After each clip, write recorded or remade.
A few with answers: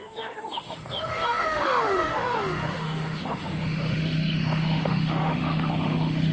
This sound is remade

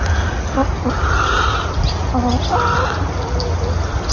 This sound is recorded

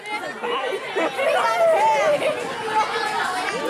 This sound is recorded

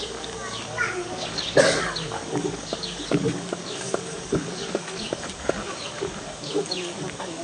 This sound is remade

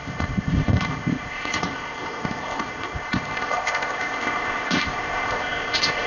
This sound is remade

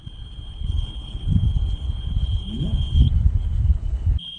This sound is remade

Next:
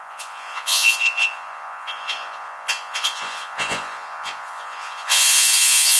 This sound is remade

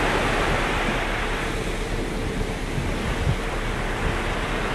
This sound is recorded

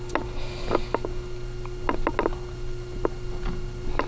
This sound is recorded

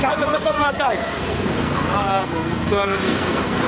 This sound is remade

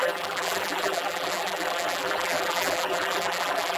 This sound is remade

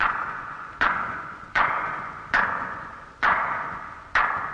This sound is remade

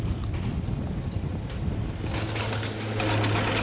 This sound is recorded